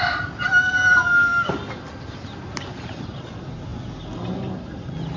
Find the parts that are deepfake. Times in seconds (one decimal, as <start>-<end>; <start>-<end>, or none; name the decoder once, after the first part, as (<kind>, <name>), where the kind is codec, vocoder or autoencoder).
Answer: none